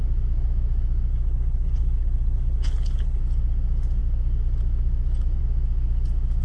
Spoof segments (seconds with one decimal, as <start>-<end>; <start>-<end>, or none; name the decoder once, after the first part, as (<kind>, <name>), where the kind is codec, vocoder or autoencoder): 1.1-3.2 (codec, HILCodec)